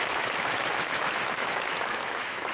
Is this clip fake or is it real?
fake